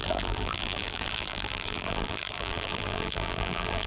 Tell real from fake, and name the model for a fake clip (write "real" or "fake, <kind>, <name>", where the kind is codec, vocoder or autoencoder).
fake, vocoder, BigVGAN v2